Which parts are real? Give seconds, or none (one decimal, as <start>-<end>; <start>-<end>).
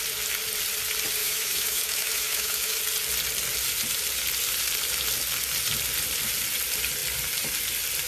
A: 0.0-1.2; 2.8-8.1